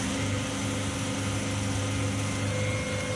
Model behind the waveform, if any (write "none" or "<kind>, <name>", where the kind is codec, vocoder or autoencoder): none